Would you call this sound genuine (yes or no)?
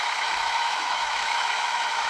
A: no